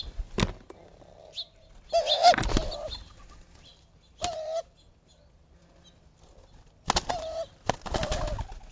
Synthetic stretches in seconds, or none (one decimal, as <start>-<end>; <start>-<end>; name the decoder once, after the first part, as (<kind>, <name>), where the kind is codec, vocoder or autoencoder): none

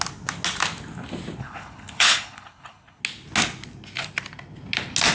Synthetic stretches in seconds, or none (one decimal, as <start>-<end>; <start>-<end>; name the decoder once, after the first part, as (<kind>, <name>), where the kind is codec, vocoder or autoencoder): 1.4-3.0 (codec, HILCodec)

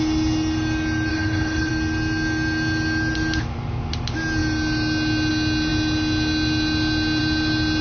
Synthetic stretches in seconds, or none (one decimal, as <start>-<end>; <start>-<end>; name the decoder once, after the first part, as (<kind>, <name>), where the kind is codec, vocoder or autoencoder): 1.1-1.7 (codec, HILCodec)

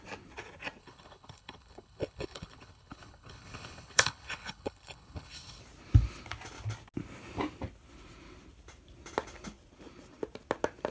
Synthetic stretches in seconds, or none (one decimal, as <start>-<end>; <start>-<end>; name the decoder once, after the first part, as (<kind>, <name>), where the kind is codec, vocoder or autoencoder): 0.8-5.6 (codec, HILCodec)

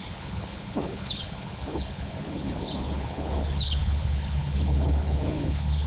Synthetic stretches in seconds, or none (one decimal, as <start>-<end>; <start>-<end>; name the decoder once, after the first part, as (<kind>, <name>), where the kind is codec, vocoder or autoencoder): 0.0-5.9 (codec, HILCodec)

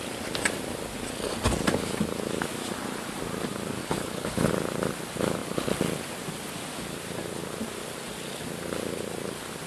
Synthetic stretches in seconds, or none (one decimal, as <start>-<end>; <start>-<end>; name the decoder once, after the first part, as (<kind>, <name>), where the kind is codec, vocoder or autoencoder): 3.8-4.5 (codec, HILCodec)

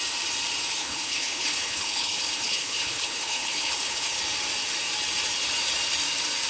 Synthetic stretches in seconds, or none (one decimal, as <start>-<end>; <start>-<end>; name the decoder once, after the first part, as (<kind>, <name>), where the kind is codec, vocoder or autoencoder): 0.8-4.2 (codec, HILCodec)